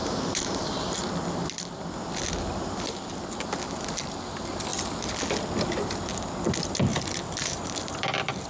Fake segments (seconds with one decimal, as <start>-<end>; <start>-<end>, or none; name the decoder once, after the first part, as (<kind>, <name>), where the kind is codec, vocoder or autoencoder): 0.0-1.1 (vocoder, BigVGAN v2); 6.9-7.6